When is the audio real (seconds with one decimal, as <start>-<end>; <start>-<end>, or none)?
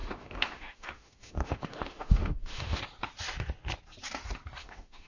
2.8-4.6